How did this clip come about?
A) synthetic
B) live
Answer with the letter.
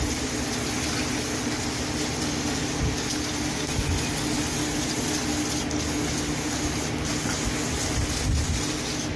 B